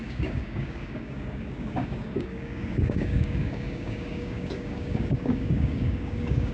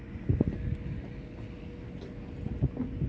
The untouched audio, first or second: second